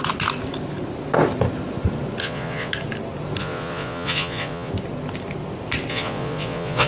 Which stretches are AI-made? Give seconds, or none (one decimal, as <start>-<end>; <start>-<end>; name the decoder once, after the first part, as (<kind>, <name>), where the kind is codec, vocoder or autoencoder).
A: 2.2-2.7 (vocoder, Vocos); 3.4-4.7; 5.9-6.9